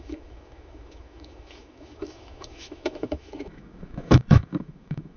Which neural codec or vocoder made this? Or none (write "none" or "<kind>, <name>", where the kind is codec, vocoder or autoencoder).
autoencoder, DAC-VAE